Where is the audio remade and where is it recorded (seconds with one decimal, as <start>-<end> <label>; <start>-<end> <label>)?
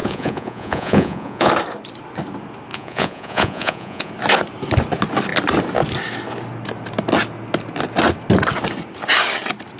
0.0-1.5 remade; 1.5-2.7 recorded; 2.7-4.1 remade; 4.1-9.8 recorded